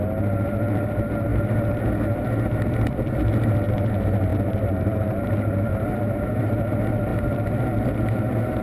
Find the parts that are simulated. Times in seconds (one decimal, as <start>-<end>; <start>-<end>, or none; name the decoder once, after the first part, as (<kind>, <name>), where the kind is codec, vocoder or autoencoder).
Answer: 4.3-5.7 (vocoder, BigVGAN v2)